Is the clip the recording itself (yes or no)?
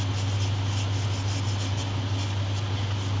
yes